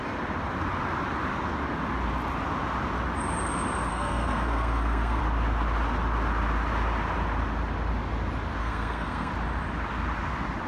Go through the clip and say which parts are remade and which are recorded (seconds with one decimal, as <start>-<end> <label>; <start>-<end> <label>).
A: 0.0-3.9 recorded; 3.9-5.2 remade; 5.2-8.6 recorded; 8.6-9.3 remade; 9.3-10.7 recorded